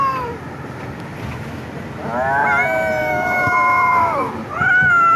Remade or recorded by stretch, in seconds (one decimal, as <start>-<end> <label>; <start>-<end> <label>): 0.0-3.0 recorded; 3.0-4.3 remade; 4.3-5.2 recorded